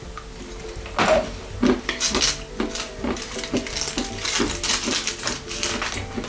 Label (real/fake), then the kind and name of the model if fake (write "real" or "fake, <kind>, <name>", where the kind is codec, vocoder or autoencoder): real